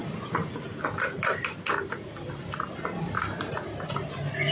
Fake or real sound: real